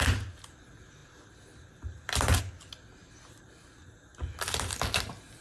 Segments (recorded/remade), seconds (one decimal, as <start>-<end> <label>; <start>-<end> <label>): 0.0-1.0 recorded; 1.0-2.4 remade; 2.4-4.1 recorded; 4.1-4.8 remade; 4.8-5.4 recorded